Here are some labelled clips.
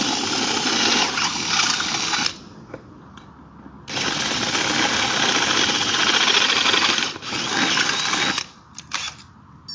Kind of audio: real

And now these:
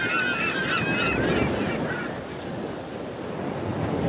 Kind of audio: real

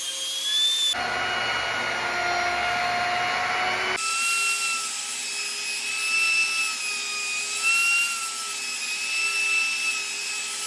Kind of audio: real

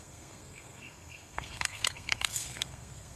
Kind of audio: fake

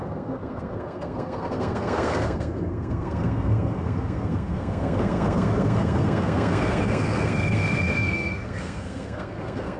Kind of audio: fake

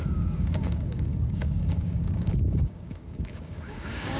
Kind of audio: fake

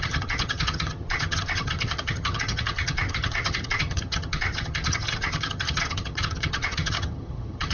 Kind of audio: fake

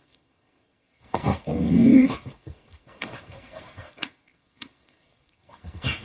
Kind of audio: fake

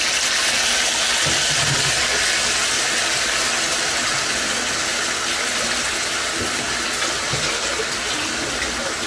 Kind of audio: real